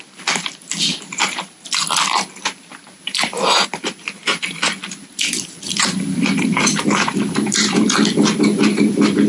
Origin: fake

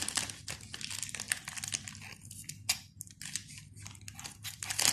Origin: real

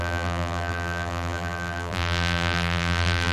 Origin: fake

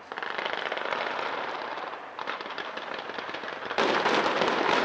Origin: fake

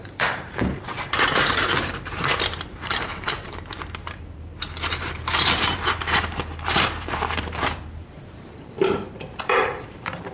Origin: fake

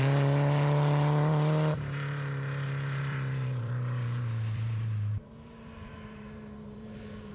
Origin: fake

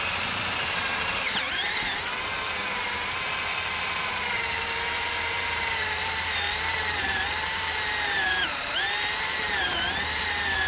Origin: fake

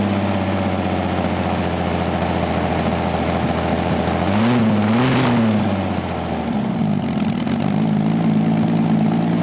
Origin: real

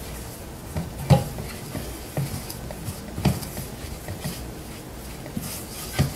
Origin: real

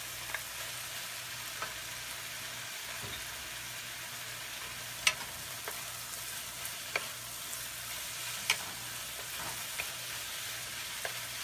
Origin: real